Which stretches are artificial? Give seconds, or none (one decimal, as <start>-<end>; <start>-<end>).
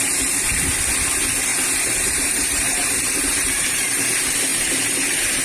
1.5-4.0; 4.5-5.4